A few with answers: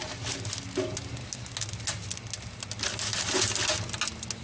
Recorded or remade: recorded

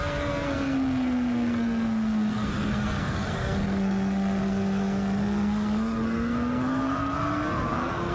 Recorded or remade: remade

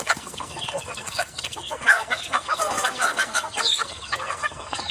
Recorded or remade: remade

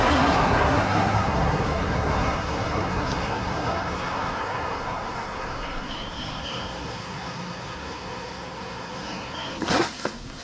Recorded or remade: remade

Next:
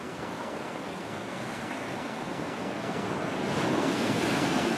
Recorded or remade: remade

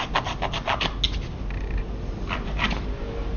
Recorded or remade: recorded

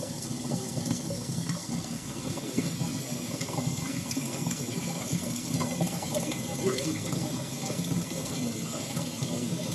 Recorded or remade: remade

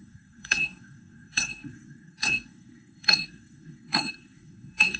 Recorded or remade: remade